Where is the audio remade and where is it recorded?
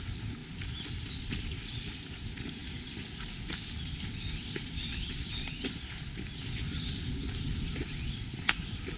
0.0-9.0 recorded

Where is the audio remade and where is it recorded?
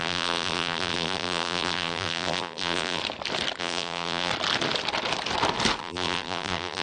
0.0-3.0 remade; 3.0-3.6 recorded; 3.6-4.3 remade; 4.3-5.8 recorded; 5.8-6.8 remade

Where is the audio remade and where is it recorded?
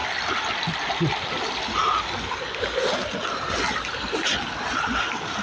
0.0-5.4 recorded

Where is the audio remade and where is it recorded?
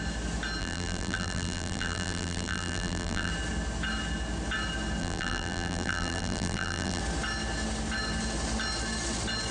0.0-0.6 recorded; 0.6-3.3 remade; 3.3-5.0 recorded; 5.0-7.0 remade; 7.0-9.5 recorded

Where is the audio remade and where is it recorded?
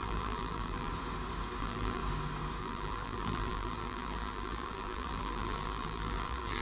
0.0-0.9 remade; 0.9-1.6 recorded; 1.6-2.0 remade; 2.0-2.6 recorded; 2.6-6.6 remade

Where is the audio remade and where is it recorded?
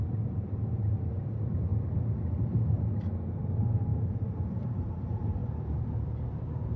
0.0-1.7 remade; 1.7-3.4 recorded; 3.4-5.4 remade; 5.4-6.3 recorded; 6.3-6.8 remade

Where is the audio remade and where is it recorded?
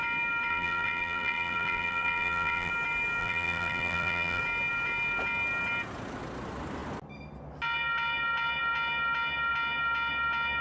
0.0-0.5 recorded; 0.5-2.7 remade; 2.7-3.2 recorded; 3.2-4.4 remade; 4.4-10.6 recorded